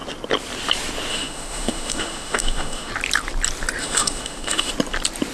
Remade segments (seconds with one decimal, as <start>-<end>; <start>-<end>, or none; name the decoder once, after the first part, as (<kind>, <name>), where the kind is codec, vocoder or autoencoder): 1.1-2.9 (autoencoder, DAC-VAE); 3.8-4.7